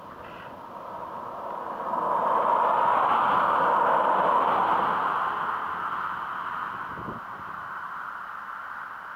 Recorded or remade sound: recorded